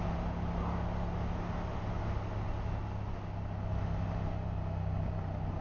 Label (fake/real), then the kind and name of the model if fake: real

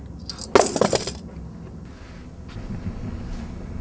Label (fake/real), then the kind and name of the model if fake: real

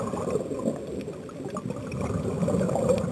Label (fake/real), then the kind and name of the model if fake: real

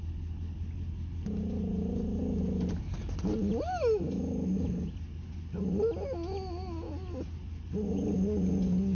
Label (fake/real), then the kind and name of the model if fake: real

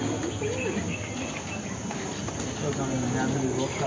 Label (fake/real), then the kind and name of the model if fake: real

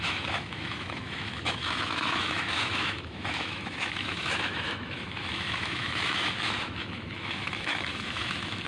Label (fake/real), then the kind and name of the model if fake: fake, autoencoder, DAC-VAE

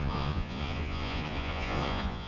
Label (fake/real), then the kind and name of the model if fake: fake, vocoder, Vocos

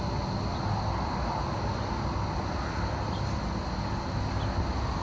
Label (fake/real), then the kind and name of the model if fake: real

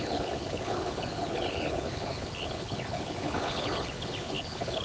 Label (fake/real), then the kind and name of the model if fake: fake, codec, HILCodec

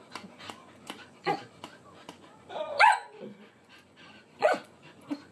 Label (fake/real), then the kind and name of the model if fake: fake, vocoder, Vocos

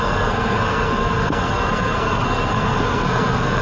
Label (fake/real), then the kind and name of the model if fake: fake, codec, SNAC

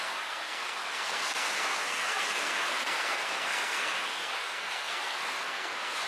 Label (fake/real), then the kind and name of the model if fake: fake, codec, SNAC